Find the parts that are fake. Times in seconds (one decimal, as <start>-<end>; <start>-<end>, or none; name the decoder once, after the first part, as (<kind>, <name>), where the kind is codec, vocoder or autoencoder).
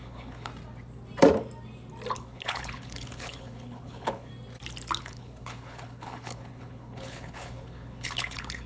0.0-0.5 (codec, HILCodec); 2.1-4.3; 5.0-8.7